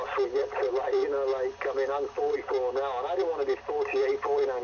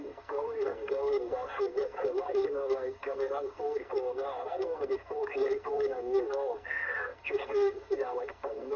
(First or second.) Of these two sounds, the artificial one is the second